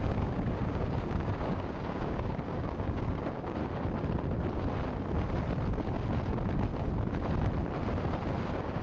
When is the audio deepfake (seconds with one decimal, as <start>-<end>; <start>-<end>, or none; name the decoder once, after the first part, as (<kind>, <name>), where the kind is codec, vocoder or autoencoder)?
0.0-3.6 (codec, DAC); 8.4-8.8